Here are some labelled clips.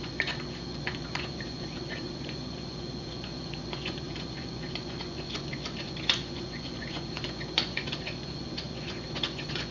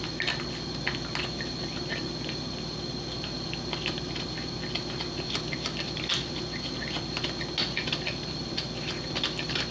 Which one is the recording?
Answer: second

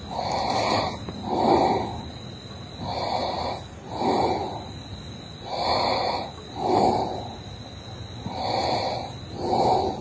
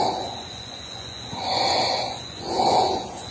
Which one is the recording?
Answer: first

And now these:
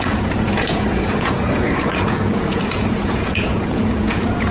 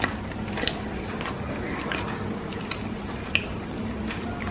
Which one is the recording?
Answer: second